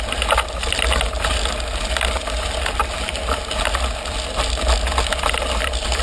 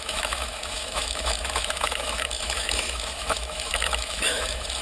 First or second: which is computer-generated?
second